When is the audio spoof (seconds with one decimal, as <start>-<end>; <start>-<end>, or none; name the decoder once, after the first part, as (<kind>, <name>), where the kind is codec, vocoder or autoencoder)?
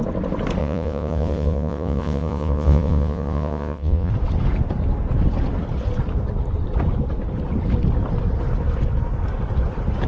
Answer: 0.6-4.1 (vocoder, Vocos)